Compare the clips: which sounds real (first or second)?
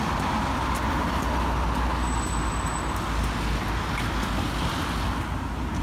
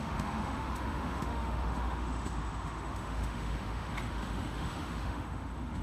first